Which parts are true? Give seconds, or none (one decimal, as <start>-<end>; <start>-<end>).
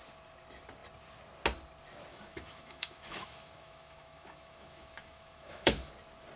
0.0-2.1; 5.9-6.4